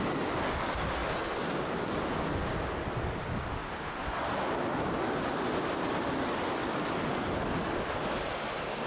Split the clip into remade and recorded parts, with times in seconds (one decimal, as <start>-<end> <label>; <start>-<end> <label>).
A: 0.0-8.9 recorded